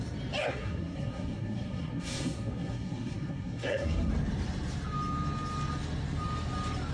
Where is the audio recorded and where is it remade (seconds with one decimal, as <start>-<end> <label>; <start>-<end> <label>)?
0.0-0.4 recorded; 0.4-4.1 remade; 4.1-6.9 recorded